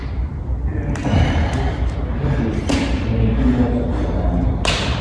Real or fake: real